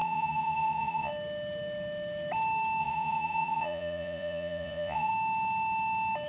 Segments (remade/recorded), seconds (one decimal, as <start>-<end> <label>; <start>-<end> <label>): 0.0-1.1 remade; 1.1-2.8 recorded; 2.8-5.1 remade; 5.1-6.3 recorded